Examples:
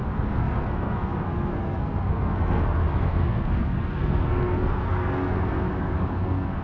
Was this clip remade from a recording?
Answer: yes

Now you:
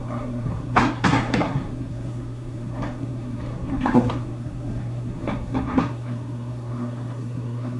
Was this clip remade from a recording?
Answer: yes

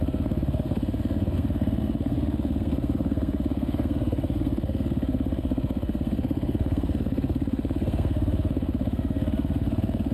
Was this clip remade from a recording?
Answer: yes